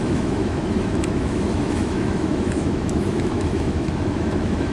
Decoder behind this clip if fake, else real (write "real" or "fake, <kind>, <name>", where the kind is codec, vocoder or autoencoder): fake, autoencoder, DAC-VAE